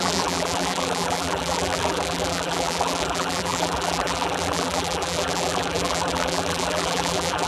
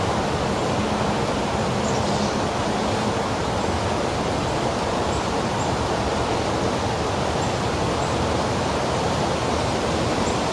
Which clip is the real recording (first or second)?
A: second